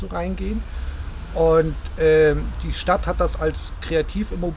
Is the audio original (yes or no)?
yes